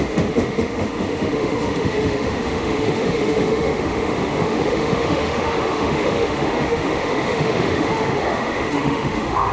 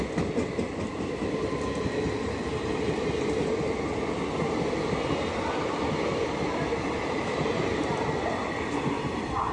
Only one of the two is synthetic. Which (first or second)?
first